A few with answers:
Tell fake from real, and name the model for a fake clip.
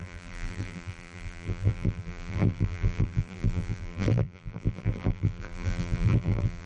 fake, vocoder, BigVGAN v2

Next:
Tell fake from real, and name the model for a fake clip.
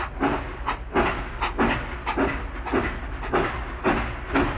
real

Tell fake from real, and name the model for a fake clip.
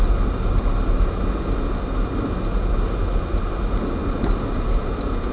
real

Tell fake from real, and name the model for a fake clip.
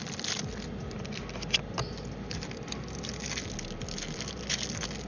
real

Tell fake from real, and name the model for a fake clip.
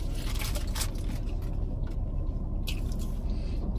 real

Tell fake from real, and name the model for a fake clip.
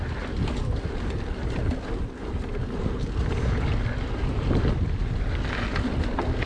real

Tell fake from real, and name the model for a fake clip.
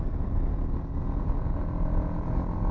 real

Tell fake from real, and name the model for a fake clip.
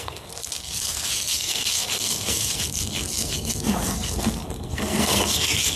fake, codec, SNAC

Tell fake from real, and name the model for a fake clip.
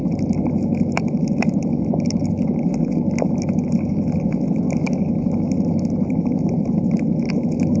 fake, autoencoder, DAC-VAE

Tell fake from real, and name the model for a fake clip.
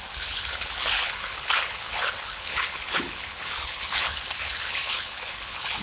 fake, codec, HILCodec